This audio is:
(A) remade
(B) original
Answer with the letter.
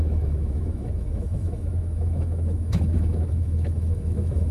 A